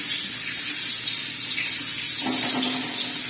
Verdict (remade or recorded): recorded